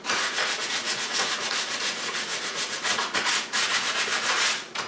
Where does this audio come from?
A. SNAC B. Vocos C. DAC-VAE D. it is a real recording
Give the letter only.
B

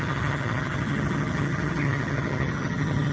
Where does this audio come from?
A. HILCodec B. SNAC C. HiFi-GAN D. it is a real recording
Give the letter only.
C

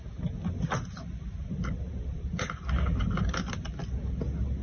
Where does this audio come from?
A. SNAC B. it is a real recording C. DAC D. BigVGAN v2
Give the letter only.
B